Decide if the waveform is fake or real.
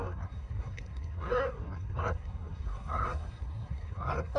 fake